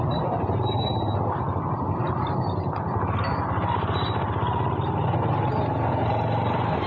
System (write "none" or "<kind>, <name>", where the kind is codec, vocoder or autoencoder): none